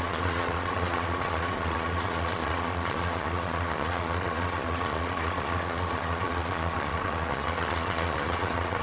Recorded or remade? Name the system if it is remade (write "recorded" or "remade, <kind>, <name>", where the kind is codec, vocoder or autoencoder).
remade, vocoder, Vocos